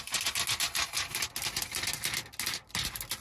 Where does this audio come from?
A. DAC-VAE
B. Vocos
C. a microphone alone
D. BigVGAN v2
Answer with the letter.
C